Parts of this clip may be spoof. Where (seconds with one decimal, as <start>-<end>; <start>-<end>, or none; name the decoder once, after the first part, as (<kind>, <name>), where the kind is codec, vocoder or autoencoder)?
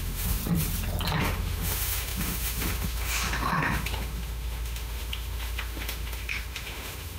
0.0-0.4 (autoencoder, DAC-VAE); 1.2-7.2